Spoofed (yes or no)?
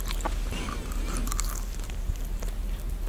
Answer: no